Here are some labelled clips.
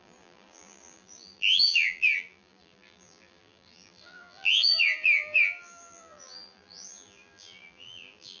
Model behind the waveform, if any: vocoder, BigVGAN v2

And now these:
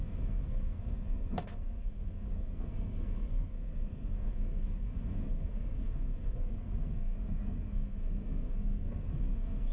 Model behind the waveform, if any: codec, SNAC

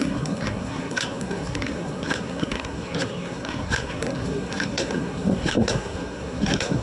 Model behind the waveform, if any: codec, SNAC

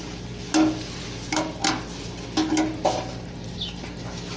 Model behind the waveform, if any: none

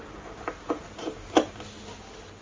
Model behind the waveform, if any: none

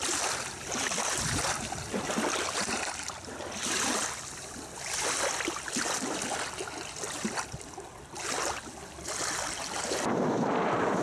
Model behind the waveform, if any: none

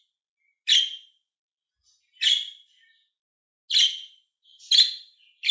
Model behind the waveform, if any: none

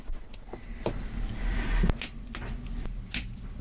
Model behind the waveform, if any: none